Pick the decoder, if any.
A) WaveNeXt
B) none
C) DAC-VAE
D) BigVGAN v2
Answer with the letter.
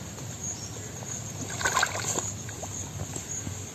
B